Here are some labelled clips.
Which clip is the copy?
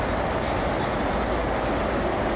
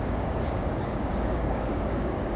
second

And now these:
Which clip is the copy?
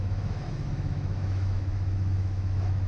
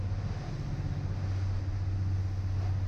first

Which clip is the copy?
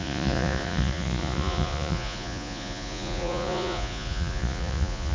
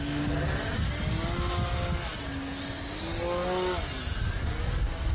first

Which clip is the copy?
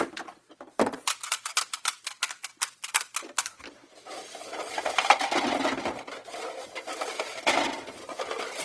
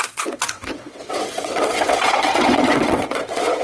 second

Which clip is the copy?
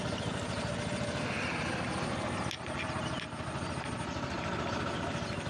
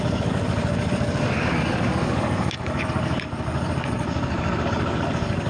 second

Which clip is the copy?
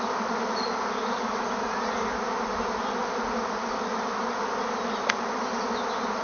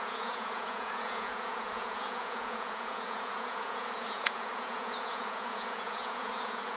second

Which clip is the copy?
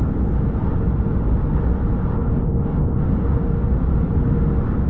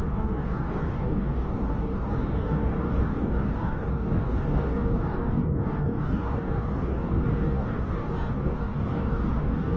second